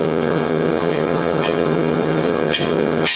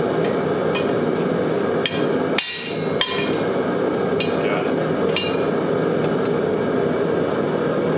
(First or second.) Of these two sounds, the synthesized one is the first